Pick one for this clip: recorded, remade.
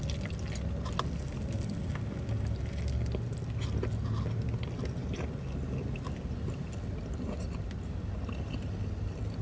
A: recorded